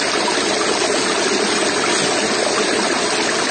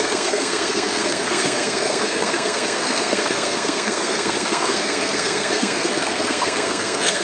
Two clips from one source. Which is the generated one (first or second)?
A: second